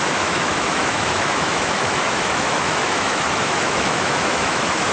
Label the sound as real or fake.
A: fake